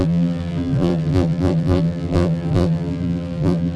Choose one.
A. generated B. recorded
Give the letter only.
A